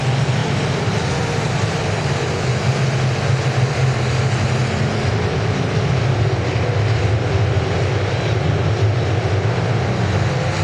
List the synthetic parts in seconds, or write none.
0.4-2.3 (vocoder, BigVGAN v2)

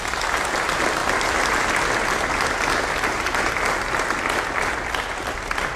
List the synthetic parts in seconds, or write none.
none

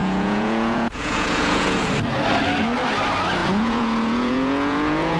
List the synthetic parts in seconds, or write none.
0.0-1.9 (vocoder, Vocos); 3.4-5.2